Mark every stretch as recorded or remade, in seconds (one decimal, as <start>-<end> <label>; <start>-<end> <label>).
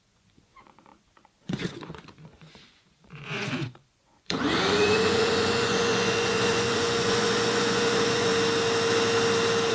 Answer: 0.0-8.3 remade; 8.3-9.7 recorded